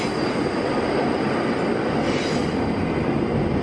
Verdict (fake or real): real